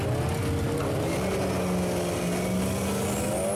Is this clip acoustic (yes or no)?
yes